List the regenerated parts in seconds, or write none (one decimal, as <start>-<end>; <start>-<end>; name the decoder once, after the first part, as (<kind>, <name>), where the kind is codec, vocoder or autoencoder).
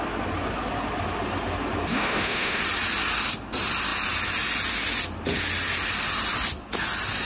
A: 1.9-2.6 (autoencoder, DAC-VAE)